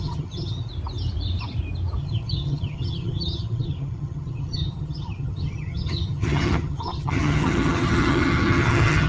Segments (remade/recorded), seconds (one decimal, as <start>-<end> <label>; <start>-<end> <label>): 0.0-0.7 remade; 0.7-2.0 recorded; 2.0-9.1 remade